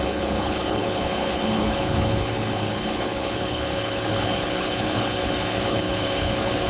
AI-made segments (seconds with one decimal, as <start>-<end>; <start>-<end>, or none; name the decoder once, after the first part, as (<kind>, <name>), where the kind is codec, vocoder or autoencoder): 0.0-6.7 (codec, HILCodec)